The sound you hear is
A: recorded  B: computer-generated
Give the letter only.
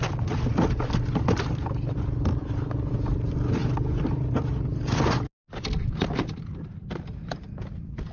A